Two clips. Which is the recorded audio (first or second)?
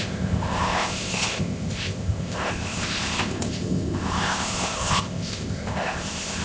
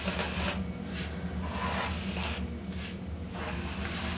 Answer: second